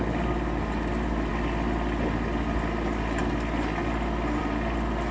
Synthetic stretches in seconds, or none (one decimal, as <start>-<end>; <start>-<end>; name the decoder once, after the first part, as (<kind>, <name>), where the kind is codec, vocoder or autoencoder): none